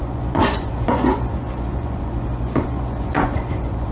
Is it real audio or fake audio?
fake